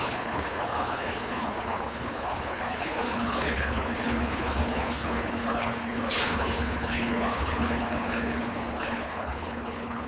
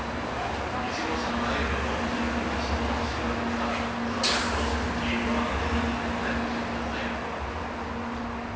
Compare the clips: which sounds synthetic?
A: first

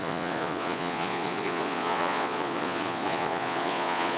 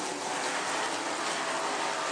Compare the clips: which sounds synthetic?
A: first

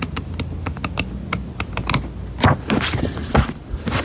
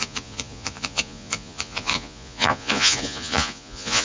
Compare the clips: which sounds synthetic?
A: second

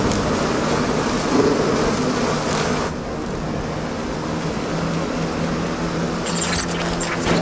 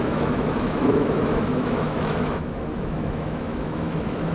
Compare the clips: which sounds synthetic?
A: second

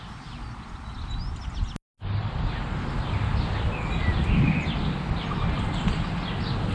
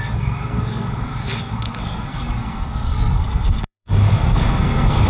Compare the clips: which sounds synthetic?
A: second